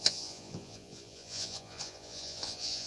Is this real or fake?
fake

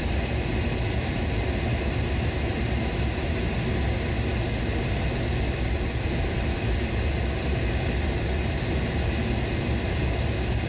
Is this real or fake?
real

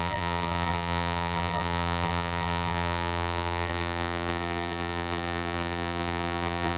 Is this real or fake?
fake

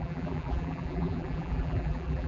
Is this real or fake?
fake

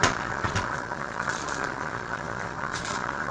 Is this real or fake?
fake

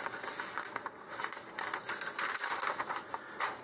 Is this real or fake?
real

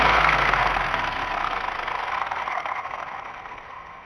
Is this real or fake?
fake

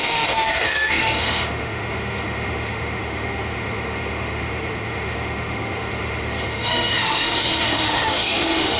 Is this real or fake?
fake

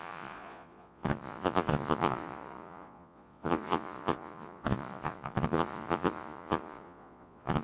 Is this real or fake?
fake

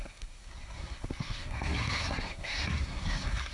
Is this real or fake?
fake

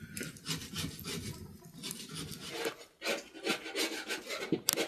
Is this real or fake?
real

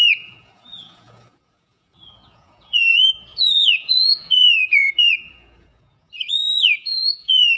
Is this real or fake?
fake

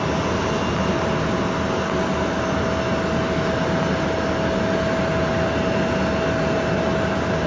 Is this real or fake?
real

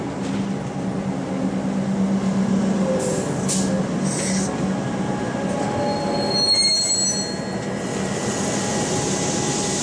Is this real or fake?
real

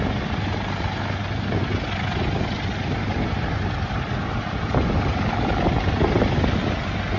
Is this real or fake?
real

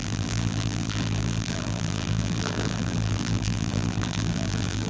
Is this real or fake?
fake